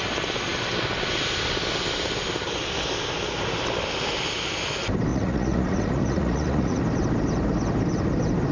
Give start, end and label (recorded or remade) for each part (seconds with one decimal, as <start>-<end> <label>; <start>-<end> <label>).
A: 0.0-5.1 recorded; 5.1-6.8 remade; 6.8-8.5 recorded